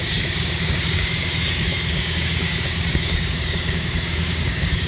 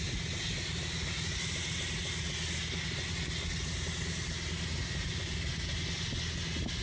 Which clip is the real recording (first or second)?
second